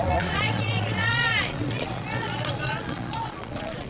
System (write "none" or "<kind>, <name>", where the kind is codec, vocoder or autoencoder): vocoder, Vocos